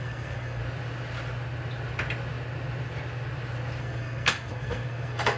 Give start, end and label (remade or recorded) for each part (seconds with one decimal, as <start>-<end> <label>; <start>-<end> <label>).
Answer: 0.0-0.6 remade; 0.6-3.8 recorded; 3.8-5.4 remade